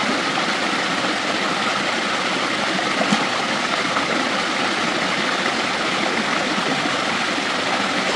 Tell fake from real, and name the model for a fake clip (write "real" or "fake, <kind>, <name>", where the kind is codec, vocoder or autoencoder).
real